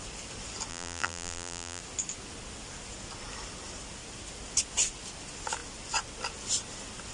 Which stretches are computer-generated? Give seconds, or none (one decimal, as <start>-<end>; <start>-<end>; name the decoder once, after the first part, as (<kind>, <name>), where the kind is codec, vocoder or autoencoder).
0.7-1.8 (vocoder, BigVGAN v2)